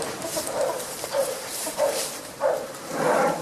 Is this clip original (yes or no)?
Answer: no